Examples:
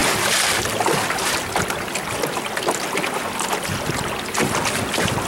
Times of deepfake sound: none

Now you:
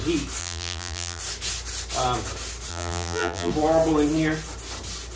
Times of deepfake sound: 0.4-1.2 (vocoder, BigVGAN v2); 2.7-3.5